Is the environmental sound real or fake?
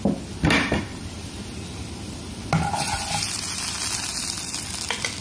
real